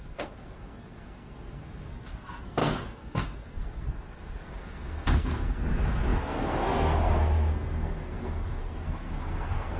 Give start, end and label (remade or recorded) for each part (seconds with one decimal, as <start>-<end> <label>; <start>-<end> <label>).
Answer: 0.0-9.8 remade